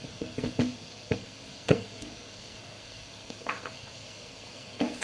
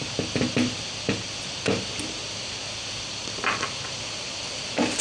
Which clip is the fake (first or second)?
first